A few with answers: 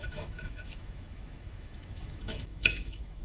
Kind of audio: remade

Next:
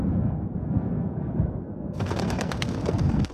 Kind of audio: remade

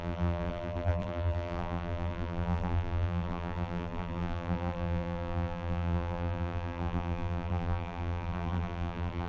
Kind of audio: remade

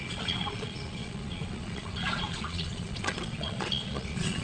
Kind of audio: remade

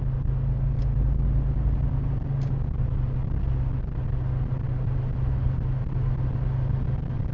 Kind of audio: recorded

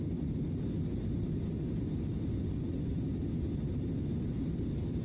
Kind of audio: recorded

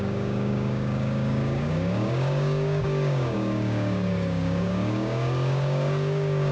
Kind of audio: remade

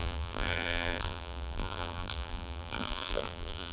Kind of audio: remade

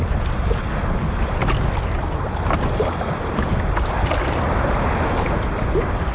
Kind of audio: recorded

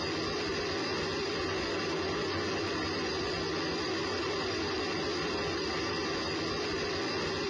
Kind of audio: recorded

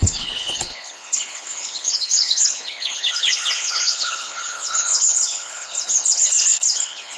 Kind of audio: remade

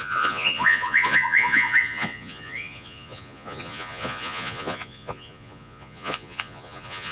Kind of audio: remade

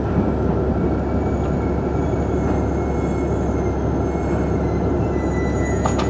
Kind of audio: recorded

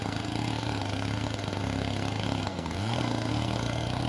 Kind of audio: remade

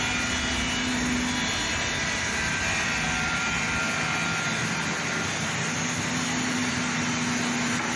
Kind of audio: recorded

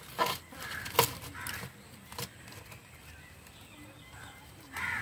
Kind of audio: recorded